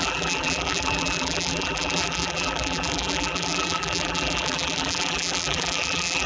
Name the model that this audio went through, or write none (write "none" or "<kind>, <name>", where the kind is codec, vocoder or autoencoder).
vocoder, BigVGAN v2